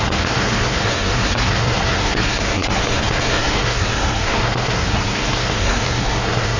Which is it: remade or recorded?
remade